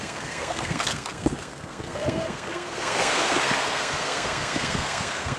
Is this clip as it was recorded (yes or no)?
no